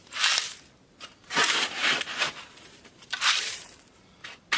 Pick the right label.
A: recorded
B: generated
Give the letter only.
B